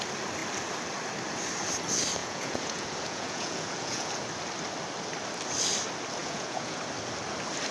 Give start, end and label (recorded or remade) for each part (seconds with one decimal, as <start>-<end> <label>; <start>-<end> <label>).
0.0-2.2 recorded; 2.2-4.1 remade; 4.1-6.2 recorded; 6.2-6.8 remade; 6.8-7.7 recorded